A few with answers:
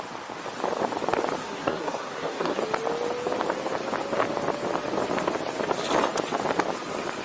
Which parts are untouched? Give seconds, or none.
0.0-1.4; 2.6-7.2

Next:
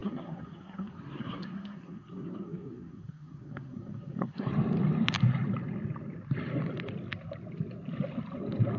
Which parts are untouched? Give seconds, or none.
4.5-8.8

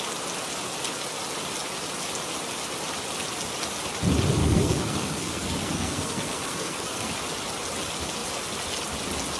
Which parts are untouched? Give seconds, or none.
0.0-4.4; 7.1-9.4

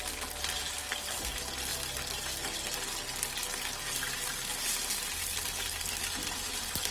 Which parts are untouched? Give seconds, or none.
0.0-6.9